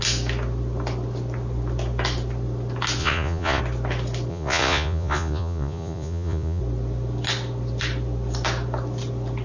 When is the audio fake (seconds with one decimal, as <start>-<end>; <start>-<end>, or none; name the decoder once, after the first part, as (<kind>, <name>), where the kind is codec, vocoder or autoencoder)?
3.0-3.6 (vocoder, Vocos); 4.3-6.6